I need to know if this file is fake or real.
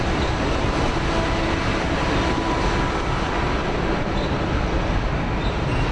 real